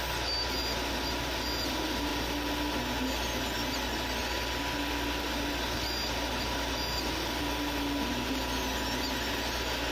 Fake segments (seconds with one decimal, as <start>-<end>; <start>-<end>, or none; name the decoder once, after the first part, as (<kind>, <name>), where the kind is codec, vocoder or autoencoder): none